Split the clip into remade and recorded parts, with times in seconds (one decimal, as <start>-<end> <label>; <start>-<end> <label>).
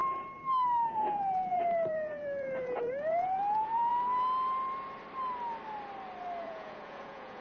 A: 0.0-0.8 recorded; 0.8-3.9 remade; 3.9-6.4 recorded; 6.4-7.4 remade